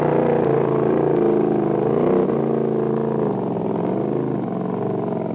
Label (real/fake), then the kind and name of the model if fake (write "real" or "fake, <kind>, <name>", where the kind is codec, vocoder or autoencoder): real